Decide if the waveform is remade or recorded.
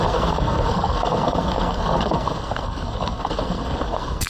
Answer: remade